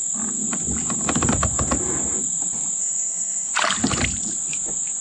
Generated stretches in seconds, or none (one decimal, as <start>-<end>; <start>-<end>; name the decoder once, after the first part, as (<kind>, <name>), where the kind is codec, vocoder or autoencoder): 2.8-3.5 (codec, SNAC)